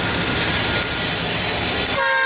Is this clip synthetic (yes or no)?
no